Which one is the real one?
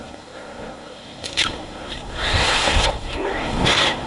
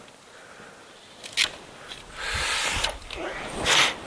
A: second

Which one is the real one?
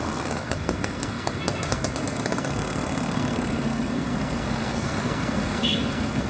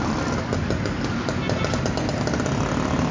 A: second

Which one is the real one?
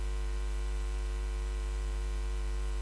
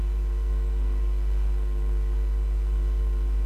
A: first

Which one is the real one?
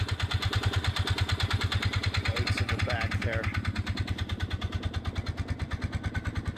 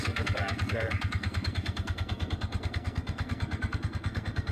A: first